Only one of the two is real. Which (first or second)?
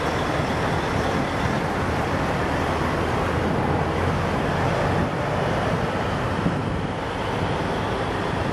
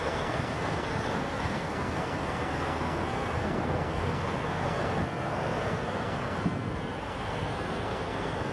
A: first